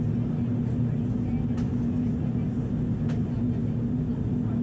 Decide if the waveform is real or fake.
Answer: real